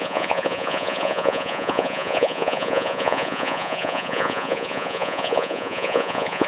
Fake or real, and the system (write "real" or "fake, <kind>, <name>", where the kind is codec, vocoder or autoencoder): fake, vocoder, Vocos